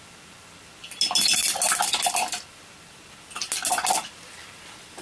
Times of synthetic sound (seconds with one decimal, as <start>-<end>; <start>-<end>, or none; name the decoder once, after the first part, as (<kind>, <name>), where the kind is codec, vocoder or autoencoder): none